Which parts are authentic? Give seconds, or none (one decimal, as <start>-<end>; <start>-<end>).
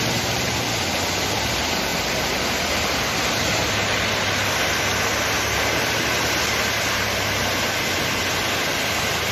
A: 0.0-9.3